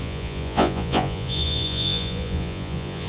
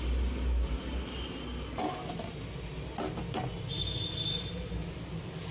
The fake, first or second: first